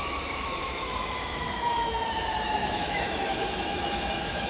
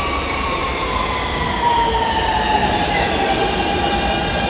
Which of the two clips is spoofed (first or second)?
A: first